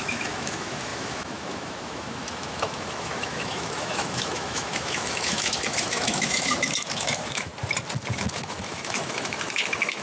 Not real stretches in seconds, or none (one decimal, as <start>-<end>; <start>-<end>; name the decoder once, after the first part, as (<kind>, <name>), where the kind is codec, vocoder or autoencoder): 0.0-7.5 (autoencoder, DAC-VAE); 8.1-10.0